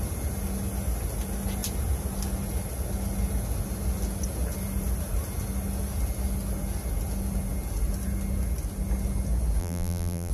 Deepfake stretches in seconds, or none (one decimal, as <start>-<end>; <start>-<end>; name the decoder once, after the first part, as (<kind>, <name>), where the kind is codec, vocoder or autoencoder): 9.6-10.3 (vocoder, BigVGAN v2)